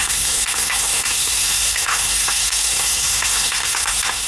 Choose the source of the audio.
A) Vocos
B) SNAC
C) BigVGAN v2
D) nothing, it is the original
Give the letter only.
B